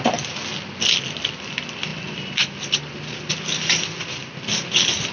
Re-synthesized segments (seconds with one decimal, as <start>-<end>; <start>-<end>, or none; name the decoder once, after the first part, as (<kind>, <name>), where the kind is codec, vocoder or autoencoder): none